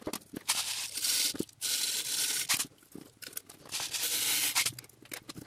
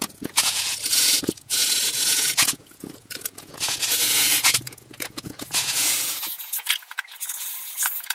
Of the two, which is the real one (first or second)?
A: first